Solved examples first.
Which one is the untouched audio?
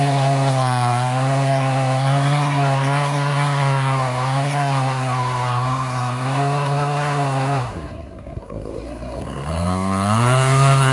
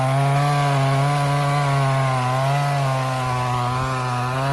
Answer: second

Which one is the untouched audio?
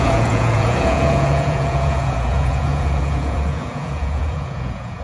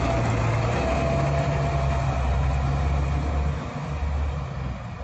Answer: second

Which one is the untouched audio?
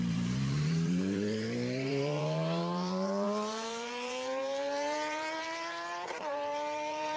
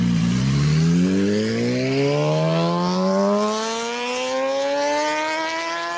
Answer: second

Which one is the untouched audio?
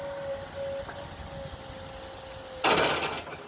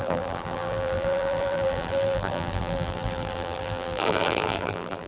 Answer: first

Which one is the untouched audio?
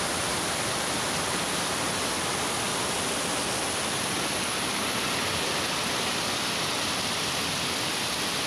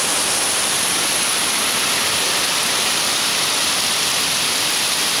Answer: first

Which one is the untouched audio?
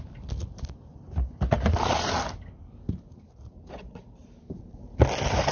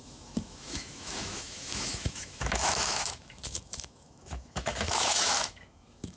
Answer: first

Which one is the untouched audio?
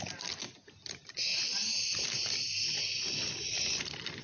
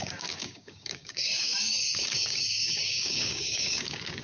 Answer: first